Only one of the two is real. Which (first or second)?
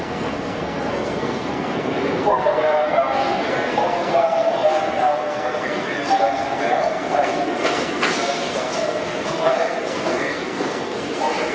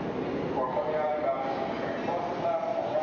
second